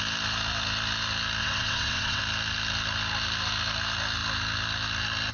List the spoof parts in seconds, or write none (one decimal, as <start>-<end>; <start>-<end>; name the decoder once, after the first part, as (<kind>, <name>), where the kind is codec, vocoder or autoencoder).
1.4-2.2 (vocoder, WaveNeXt)